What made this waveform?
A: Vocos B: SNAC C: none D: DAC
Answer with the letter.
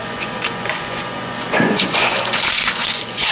A